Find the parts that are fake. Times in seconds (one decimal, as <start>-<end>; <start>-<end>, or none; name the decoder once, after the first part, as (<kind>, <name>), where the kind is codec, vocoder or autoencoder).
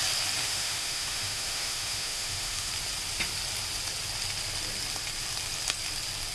0.4-2.7 (autoencoder, DAC-VAE)